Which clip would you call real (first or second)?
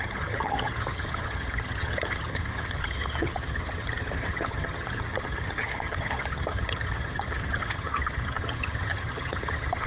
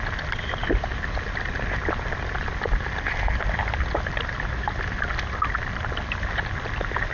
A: second